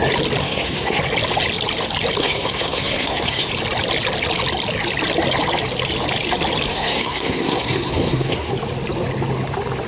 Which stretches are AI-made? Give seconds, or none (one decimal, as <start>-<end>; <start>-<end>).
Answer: 0.4-1.0; 2.2-3.5; 6.7-8.5